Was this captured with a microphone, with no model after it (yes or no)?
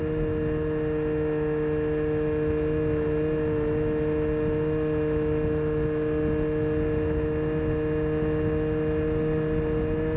yes